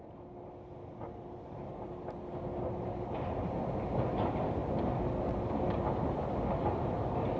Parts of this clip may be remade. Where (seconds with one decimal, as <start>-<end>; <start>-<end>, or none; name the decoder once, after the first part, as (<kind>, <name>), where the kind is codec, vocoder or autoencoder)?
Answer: none